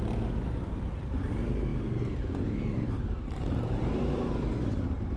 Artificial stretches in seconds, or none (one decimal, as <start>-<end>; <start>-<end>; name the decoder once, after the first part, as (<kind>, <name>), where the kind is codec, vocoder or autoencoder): none